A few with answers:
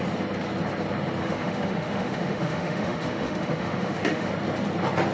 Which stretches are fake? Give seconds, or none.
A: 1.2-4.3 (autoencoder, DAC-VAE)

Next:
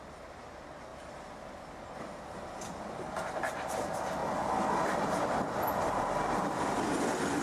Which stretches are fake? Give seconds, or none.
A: none

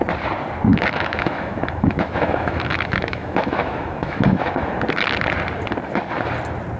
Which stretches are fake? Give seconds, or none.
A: 0.7-4.8 (autoencoder, DAC-VAE)

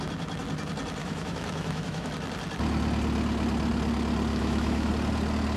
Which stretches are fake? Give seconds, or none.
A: 1.0-2.1 (autoencoder, DAC-VAE); 4.3-4.9

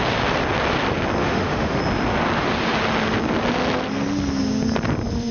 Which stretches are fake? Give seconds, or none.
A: 1.2-1.8 (autoencoder, DAC-VAE)

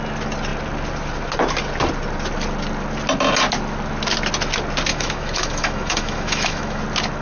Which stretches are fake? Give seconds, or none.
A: 4.9-6.8 (autoencoder, DAC-VAE)

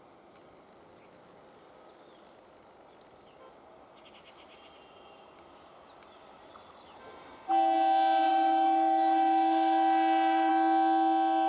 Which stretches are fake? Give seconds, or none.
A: 8.3-10.5 (autoencoder, DAC-VAE)